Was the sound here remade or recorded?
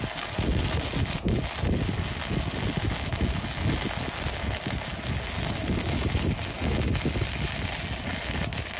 recorded